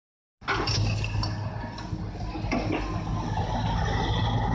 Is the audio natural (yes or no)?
yes